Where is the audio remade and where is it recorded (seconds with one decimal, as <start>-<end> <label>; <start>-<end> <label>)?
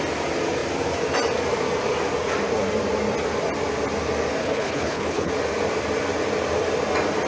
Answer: 0.0-4.4 recorded; 4.4-5.3 remade; 5.3-7.3 recorded